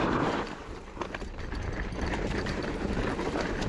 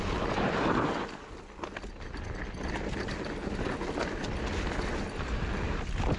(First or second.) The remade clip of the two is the first